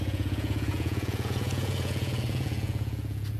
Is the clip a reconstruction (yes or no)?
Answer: yes